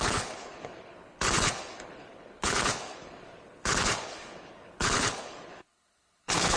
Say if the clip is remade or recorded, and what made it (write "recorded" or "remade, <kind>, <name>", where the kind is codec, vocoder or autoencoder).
remade, codec, HILCodec